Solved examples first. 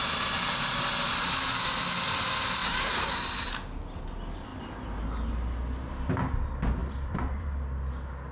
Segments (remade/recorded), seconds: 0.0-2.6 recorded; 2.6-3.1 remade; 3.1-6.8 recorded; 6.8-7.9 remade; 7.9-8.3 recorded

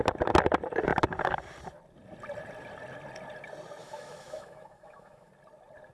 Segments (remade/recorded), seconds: 0.0-3.8 recorded; 3.8-5.3 remade; 5.3-5.9 recorded